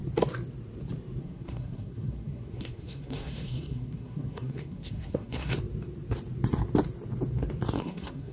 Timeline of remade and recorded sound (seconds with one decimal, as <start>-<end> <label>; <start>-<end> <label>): 0.0-1.2 recorded; 1.2-5.5 remade; 5.5-7.8 recorded; 7.8-8.3 remade